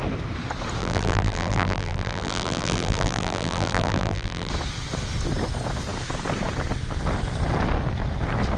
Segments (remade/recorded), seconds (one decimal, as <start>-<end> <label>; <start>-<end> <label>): 0.0-0.8 recorded; 0.8-4.5 remade; 4.5-8.6 recorded